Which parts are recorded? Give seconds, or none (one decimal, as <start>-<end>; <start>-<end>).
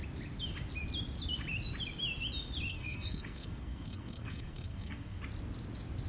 0.0-2.7; 5.2-6.1